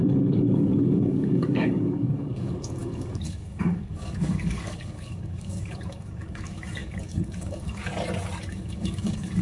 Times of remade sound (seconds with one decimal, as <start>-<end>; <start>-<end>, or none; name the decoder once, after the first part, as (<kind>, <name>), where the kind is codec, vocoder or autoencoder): 0.0-7.9 (codec, DAC); 8.5-9.4